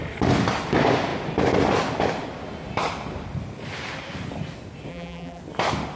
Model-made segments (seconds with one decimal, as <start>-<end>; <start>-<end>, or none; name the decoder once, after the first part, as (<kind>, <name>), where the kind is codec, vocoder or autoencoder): 4.9-5.4 (vocoder, BigVGAN v2)